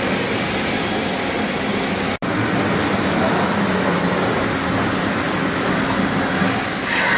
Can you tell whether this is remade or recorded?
recorded